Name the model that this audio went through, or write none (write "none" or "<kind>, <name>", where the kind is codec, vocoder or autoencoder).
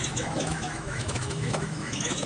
autoencoder, DAC-VAE